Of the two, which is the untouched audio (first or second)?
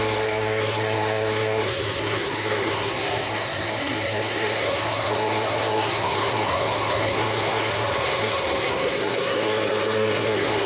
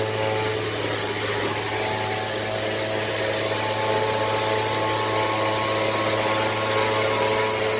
second